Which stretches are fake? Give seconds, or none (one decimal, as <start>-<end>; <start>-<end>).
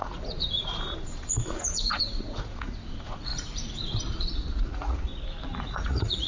0.0-3.3; 4.1-5.1; 5.6-6.3